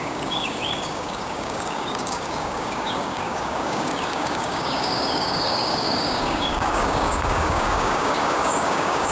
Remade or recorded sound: remade